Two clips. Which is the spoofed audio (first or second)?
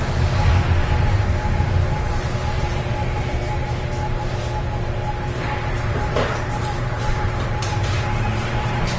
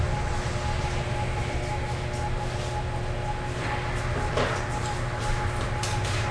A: first